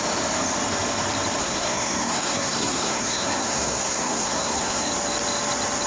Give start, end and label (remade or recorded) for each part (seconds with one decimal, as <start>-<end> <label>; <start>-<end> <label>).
0.0-1.4 recorded; 1.4-4.9 remade; 4.9-5.9 recorded